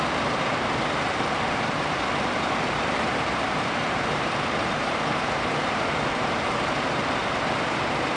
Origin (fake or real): fake